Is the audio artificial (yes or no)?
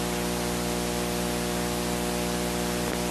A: no